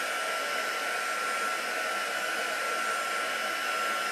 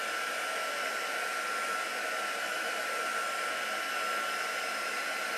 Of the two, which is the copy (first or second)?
second